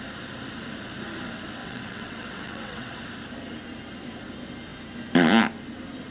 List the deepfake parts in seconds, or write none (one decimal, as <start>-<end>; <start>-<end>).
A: 1.6-3.0